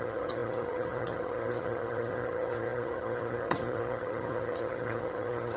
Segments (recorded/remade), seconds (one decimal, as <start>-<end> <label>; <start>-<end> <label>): 0.0-5.6 remade